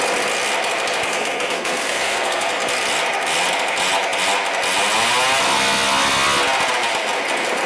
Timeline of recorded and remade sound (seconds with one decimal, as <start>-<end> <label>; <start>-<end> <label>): 0.0-1.1 recorded; 1.1-2.5 remade; 2.5-7.7 recorded